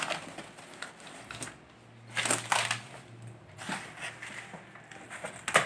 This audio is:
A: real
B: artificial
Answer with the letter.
A